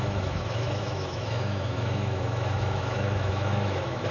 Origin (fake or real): fake